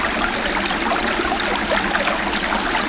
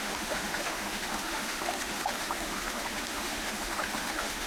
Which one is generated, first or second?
second